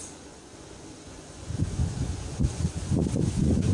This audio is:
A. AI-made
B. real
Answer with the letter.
A